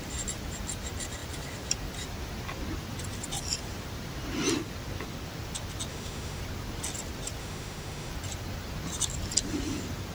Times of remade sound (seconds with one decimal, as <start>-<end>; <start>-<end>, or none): 5.9-6.4; 7.4-8.1